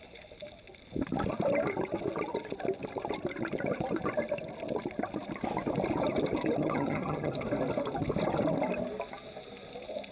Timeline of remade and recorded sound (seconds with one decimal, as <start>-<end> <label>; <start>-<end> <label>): 0.0-6.6 recorded; 6.6-7.3 remade; 7.3-10.1 recorded